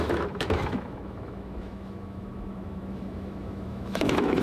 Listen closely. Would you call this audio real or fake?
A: fake